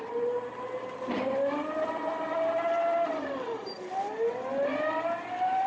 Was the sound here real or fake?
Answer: real